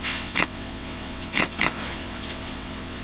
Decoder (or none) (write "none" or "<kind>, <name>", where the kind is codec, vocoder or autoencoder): vocoder, WaveNeXt